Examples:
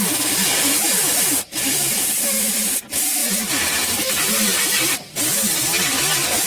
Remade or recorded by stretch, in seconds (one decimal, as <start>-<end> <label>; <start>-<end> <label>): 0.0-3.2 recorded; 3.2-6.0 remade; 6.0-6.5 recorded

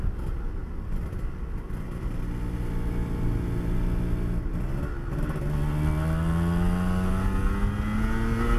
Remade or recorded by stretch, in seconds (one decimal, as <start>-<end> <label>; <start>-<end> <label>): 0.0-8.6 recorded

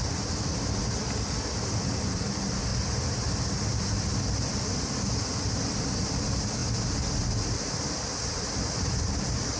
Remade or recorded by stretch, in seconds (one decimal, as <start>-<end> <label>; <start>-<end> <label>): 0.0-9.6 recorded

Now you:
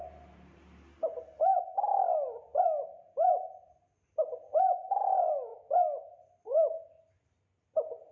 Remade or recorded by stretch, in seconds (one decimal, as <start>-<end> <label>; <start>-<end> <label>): 0.0-8.1 recorded

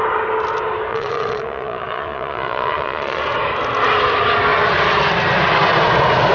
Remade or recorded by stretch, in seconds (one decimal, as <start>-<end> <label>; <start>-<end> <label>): 0.0-0.9 recorded; 0.9-3.2 remade; 3.2-6.3 recorded

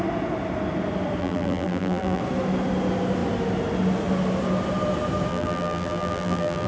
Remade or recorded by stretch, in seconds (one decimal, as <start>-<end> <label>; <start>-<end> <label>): 0.0-1.2 recorded; 1.2-2.2 remade; 2.2-5.3 recorded; 5.3-6.7 remade